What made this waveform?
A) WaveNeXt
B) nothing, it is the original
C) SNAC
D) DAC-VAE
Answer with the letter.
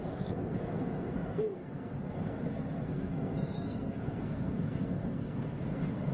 C